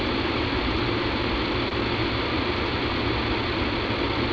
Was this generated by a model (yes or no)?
no